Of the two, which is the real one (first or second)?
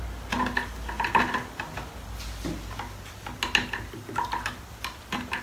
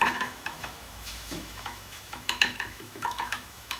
first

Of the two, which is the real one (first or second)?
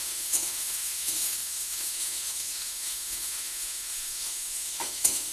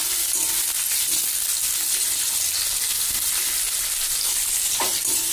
second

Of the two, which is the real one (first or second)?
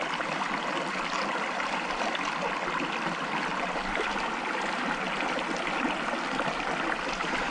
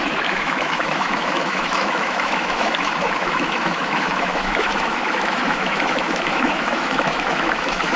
first